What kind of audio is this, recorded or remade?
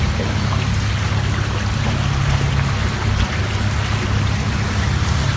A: recorded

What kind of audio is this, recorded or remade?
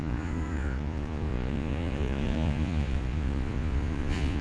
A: remade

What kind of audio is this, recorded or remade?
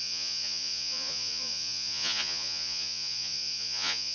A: remade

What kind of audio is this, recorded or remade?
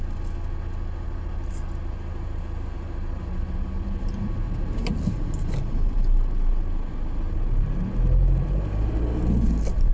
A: recorded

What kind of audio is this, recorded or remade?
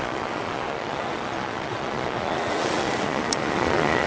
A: remade